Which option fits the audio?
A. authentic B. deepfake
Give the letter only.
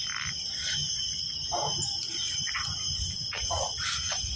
A